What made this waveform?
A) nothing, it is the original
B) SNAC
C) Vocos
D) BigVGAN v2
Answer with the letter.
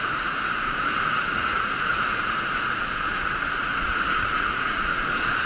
C